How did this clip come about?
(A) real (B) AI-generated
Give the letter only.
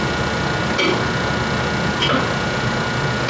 A